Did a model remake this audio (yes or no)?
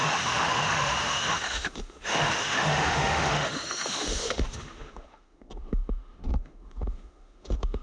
yes